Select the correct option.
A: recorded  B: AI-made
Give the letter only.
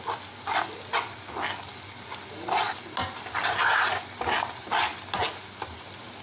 A